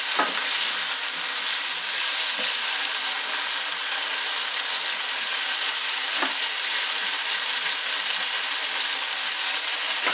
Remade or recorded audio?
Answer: recorded